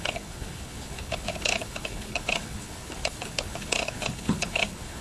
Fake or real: fake